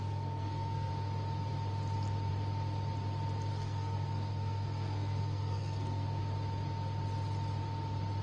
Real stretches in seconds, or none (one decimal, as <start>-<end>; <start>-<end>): 0.9-3.5; 6.2-8.2